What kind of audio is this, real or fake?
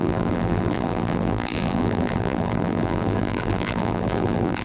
fake